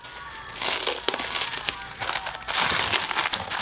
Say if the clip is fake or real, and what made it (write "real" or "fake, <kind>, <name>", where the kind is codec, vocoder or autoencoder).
real